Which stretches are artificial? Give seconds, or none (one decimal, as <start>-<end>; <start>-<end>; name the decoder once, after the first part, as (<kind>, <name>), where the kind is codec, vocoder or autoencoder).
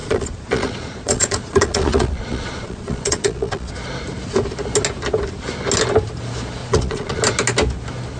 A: 0.0-3.7 (vocoder, Vocos); 6.6-7.2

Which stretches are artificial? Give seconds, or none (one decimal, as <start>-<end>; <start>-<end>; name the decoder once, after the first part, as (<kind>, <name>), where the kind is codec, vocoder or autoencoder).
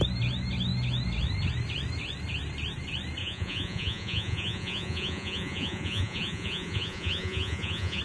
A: 3.2-8.0 (vocoder, Vocos)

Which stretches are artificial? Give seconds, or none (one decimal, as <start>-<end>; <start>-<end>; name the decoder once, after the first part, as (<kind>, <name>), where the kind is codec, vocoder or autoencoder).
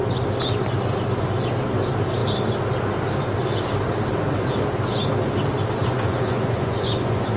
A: 5.8-7.4 (vocoder, Vocos)